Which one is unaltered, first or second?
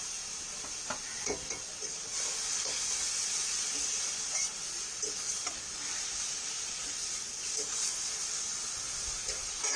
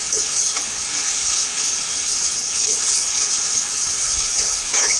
first